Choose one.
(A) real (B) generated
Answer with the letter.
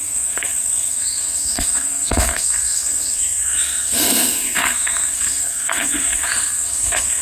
B